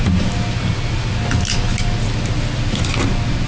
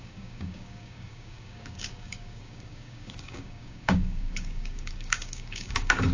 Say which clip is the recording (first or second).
first